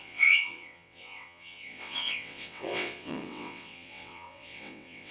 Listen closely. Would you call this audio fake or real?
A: fake